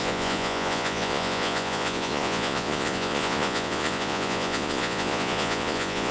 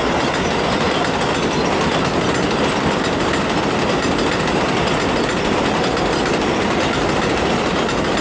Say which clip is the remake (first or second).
first